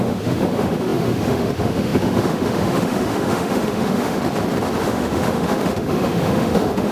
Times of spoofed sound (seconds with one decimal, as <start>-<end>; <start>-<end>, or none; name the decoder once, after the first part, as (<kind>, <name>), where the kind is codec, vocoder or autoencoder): 0.0-4.2 (autoencoder, DAC-VAE); 4.8-6.9